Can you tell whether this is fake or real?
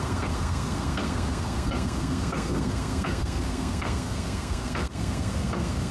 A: fake